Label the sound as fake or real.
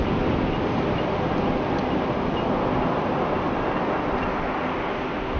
real